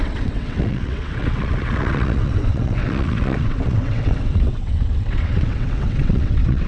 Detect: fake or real fake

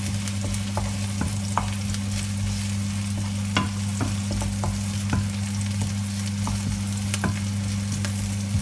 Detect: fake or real real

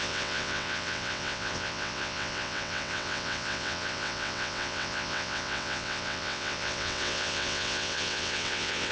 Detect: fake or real fake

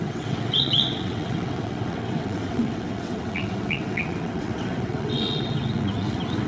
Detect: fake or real fake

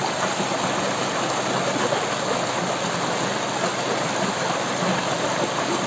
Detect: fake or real real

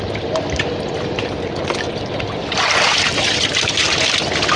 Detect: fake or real real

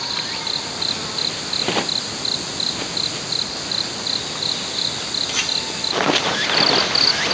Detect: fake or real real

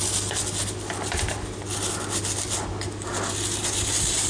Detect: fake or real real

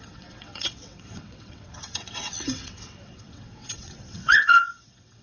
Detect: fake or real fake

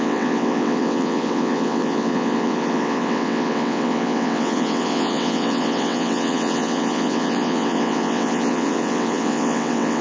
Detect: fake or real fake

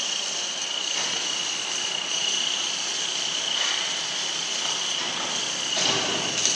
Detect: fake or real real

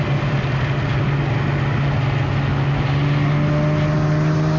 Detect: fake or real real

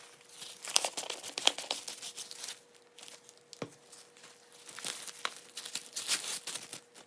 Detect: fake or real real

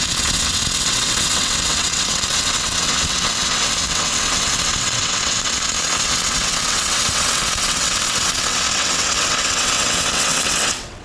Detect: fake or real fake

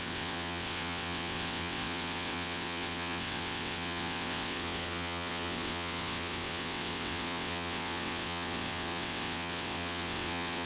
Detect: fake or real fake